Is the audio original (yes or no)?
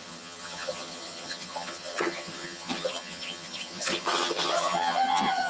no